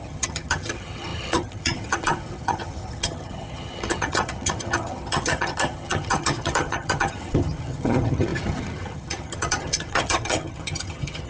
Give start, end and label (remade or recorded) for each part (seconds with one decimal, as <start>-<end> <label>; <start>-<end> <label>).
0.0-11.3 remade